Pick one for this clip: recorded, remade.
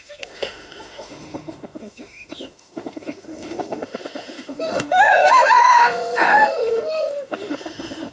remade